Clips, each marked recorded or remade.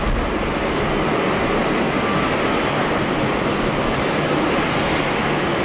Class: recorded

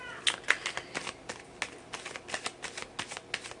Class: recorded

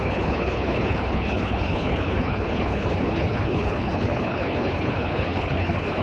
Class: remade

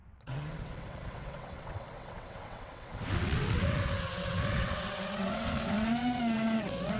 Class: remade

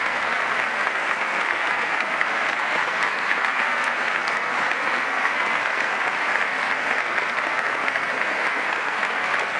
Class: remade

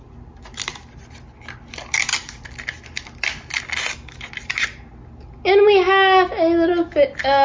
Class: recorded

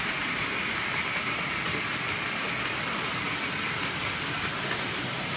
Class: recorded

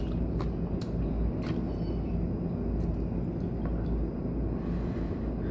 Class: recorded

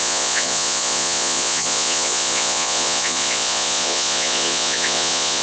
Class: remade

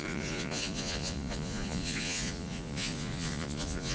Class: remade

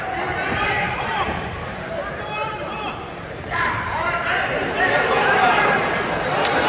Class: remade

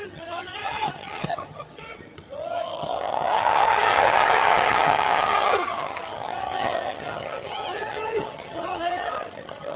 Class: remade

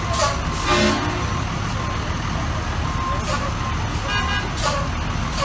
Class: recorded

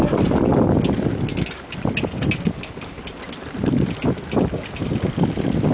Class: recorded